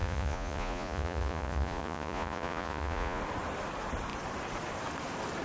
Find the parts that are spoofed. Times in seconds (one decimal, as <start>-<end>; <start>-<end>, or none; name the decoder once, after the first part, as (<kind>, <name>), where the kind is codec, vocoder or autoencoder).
0.0-3.2 (vocoder, Vocos)